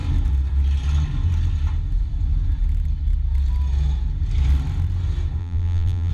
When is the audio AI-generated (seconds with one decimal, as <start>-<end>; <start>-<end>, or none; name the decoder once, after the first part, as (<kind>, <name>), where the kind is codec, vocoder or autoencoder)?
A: 5.4-6.1 (vocoder, BigVGAN v2)